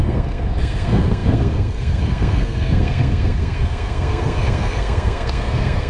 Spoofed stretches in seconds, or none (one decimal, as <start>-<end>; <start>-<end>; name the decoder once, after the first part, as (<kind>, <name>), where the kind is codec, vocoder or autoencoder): 0.0-5.9 (codec, SNAC)